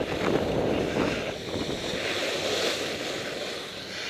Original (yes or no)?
yes